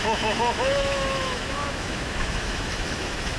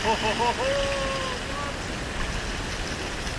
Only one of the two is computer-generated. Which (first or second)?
first